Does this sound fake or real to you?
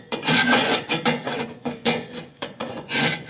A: fake